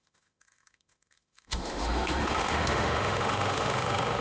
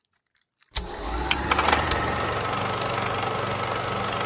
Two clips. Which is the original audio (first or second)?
second